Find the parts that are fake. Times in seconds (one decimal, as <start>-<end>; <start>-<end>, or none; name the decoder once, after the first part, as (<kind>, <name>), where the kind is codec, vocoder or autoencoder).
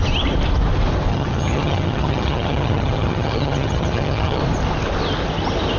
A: 1.1-4.4 (vocoder, HiFi-GAN)